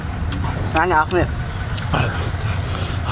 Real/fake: real